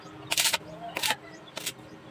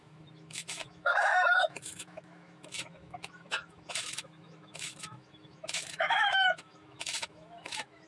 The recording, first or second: first